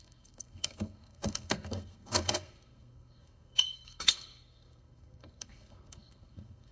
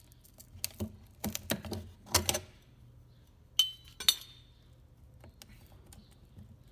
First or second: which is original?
second